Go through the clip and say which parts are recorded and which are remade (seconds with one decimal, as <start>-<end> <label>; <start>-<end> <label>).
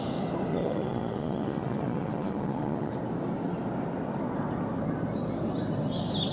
0.0-0.5 recorded; 0.5-2.9 remade; 2.9-6.3 recorded